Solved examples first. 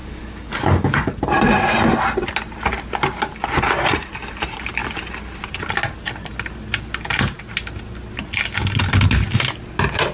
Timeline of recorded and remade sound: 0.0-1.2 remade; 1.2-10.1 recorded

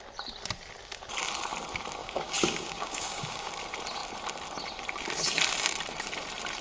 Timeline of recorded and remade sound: 0.0-2.0 recorded; 2.0-3.5 remade; 3.5-6.6 recorded

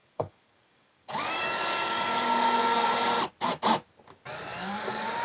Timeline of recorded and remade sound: 0.0-3.1 remade; 3.1-4.5 recorded; 4.5-5.2 remade

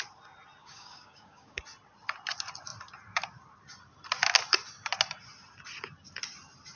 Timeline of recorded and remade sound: 0.0-0.6 recorded; 0.6-1.6 remade; 1.6-6.8 recorded

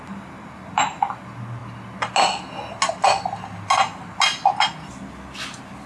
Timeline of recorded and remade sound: 0.0-5.9 recorded

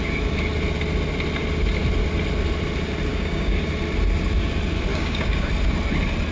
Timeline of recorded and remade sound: 0.0-3.1 recorded; 3.1-3.6 remade; 3.6-4.9 recorded; 4.9-5.5 remade; 5.5-6.3 recorded